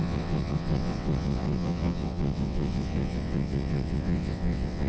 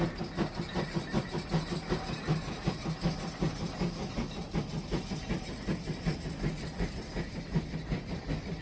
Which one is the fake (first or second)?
first